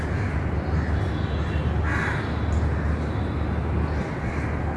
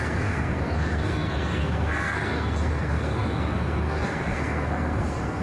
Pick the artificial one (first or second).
second